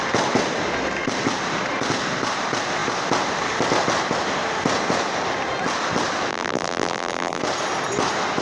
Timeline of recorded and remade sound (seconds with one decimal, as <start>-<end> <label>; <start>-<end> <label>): 0.0-6.3 recorded; 6.3-7.4 remade; 7.4-8.4 recorded